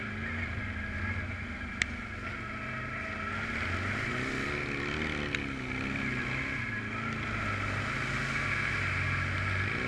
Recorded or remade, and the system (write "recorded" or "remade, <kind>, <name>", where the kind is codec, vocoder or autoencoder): recorded